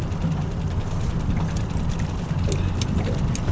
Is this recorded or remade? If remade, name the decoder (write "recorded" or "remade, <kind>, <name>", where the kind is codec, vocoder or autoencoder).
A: recorded